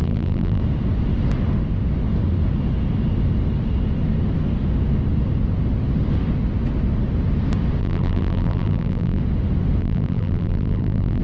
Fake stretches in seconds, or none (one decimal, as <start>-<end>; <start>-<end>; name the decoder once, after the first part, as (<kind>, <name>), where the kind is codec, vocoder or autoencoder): 0.0-0.6 (vocoder, BigVGAN v2); 7.8-9.2; 9.8-11.2